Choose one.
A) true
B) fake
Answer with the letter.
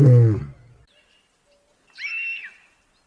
A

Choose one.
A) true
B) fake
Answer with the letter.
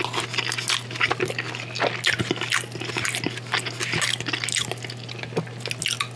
A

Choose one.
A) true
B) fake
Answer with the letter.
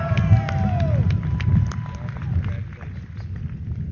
A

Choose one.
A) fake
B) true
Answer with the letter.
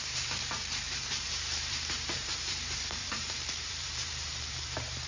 A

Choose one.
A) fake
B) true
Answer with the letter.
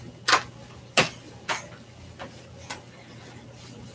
B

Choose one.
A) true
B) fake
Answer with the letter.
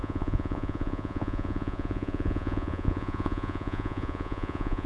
B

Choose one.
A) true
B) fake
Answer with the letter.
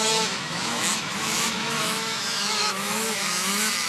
B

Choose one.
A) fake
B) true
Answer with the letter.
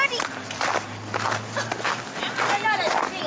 B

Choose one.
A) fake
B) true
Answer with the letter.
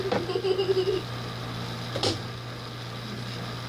B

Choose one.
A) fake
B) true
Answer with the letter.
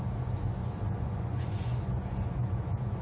A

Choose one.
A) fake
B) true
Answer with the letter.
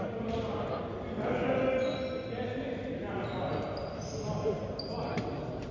B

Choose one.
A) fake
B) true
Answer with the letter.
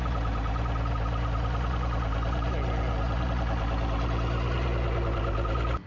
B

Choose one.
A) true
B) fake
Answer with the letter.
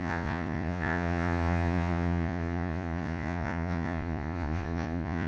B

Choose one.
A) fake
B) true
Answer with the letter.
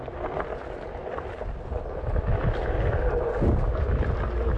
B